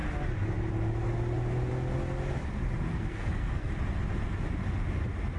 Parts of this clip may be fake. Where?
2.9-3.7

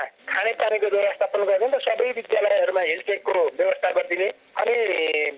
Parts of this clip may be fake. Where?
0.6-1.6; 2.3-4.0

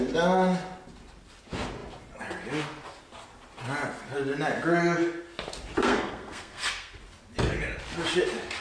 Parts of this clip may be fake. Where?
5.8-7.0

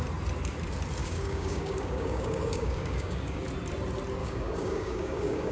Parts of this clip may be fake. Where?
1.0-3.4; 4.2-5.5

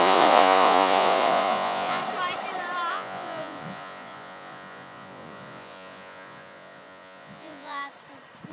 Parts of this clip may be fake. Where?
0.0-2.0; 2.9-7.8